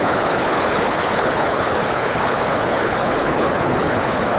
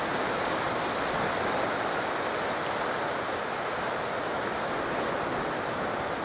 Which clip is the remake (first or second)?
first